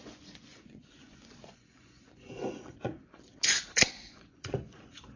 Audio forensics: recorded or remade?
remade